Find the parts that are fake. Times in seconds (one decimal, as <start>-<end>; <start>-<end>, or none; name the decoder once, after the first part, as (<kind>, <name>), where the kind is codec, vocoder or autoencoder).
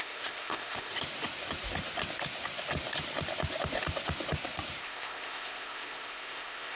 0.0-0.9 (codec, ZipCodec); 4.8-6.8